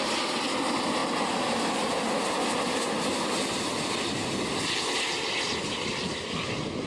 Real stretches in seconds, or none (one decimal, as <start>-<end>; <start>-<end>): 0.0-6.9

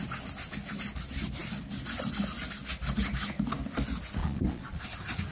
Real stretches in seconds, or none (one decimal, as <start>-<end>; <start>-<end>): 0.0-4.2; 4.8-5.3

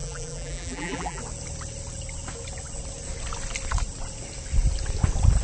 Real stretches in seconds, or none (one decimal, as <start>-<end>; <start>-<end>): 1.2-5.4

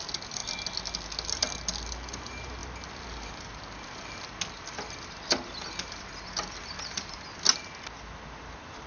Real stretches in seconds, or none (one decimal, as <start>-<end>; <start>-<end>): 0.0-8.9

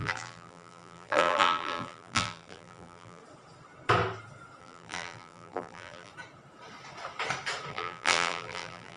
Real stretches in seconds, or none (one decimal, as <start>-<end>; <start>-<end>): 3.2-4.6; 6.1-7.7